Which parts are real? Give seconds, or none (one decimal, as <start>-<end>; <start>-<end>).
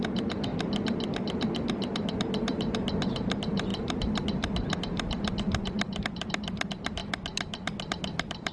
0.5-2.1; 7.0-7.9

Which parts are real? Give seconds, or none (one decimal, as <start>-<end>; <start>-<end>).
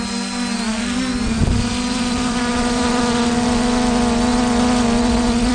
0.0-1.4; 3.0-5.5